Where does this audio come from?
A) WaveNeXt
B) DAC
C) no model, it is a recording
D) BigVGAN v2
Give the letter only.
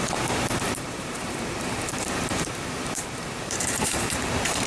D